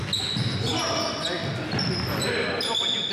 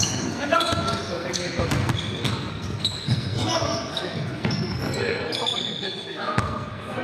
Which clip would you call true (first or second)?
first